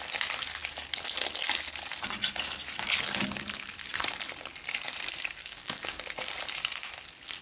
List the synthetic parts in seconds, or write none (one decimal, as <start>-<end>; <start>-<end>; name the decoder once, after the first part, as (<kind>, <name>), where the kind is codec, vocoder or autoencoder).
5.4-6.0 (codec, DAC)